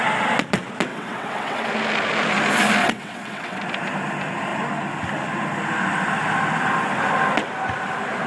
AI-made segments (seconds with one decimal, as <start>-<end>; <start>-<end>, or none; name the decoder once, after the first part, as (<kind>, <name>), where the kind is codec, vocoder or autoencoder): 0.9-1.7 (vocoder, WaveNeXt); 2.8-3.6